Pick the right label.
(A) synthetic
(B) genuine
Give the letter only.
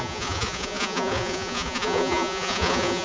A